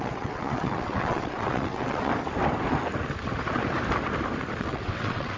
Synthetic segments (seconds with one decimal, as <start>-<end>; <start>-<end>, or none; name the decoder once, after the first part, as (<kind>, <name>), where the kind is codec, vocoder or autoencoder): 0.0-2.1 (vocoder, WaveNeXt); 4.6-5.4